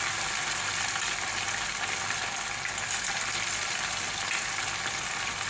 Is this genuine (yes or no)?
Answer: no